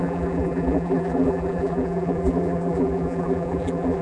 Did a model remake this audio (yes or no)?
yes